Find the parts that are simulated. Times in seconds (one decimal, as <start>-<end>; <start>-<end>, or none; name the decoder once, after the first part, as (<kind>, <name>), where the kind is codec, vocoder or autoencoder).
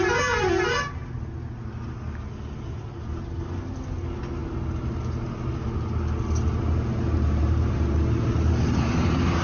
none